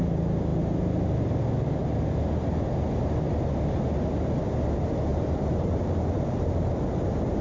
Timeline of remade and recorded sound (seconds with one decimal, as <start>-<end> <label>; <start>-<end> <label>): 0.0-5.1 recorded; 5.1-6.7 remade; 6.7-7.4 recorded